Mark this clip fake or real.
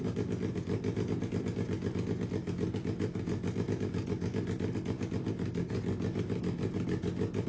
real